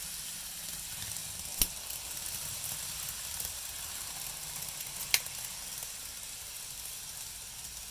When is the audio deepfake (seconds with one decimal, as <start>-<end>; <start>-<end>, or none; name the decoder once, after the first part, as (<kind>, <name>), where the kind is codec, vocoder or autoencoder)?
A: none